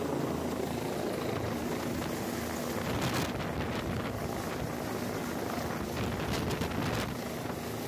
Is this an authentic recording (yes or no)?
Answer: yes